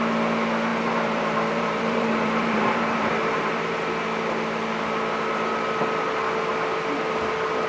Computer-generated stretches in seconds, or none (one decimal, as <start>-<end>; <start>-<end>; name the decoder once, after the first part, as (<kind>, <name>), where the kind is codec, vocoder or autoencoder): 0.7-3.7 (vocoder, BigVGAN v2)